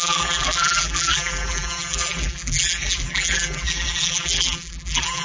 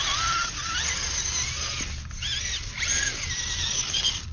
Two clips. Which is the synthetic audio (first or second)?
first